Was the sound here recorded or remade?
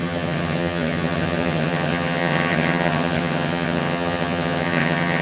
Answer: remade